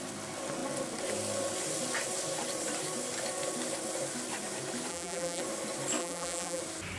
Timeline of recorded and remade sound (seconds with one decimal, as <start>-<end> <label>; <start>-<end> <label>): 0.0-4.9 recorded; 4.9-5.4 remade; 5.4-6.0 recorded; 6.0-6.6 remade; 6.6-7.0 recorded